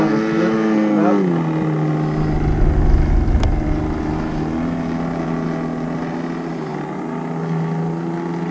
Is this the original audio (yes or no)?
yes